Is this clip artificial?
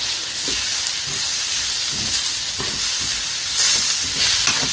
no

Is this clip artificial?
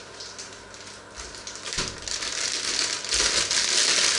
no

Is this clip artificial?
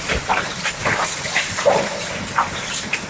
yes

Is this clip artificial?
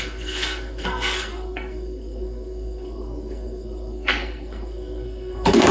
yes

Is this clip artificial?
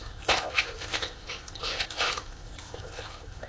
yes